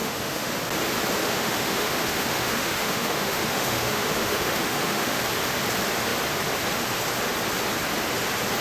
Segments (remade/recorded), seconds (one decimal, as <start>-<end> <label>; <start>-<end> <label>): 0.0-0.5 remade; 0.5-1.2 recorded; 1.2-5.2 remade; 5.2-8.6 recorded